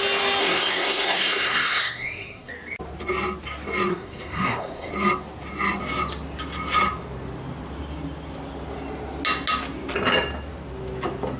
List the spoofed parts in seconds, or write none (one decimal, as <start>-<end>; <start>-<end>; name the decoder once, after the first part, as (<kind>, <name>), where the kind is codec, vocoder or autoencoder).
0.4-2.5 (codec, SNAC); 3.9-4.9